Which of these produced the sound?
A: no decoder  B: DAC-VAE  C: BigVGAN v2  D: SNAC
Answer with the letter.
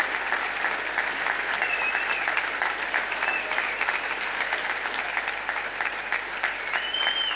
C